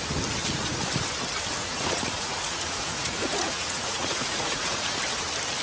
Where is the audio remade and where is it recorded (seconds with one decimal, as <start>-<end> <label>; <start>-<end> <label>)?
0.0-1.6 recorded; 1.6-5.0 remade; 5.0-5.6 recorded